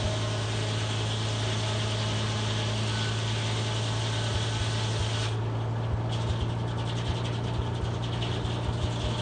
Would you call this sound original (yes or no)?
yes